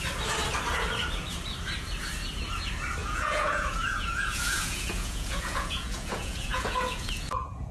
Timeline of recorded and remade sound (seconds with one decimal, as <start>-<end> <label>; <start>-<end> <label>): 0.0-3.0 recorded; 3.0-7.7 remade